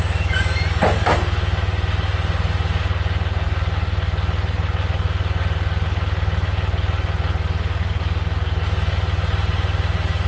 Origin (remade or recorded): recorded